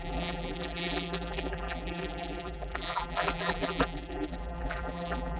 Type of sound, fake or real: fake